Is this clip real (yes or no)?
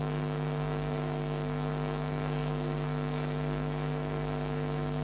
no